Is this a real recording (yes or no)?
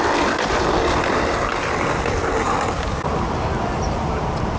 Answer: yes